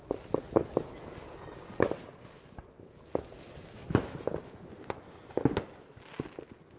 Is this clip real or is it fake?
real